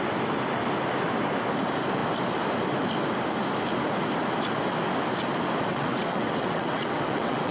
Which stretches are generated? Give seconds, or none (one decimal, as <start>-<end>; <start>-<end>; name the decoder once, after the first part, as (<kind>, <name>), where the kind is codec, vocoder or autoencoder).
5.7-7.5 (vocoder, WaveNeXt)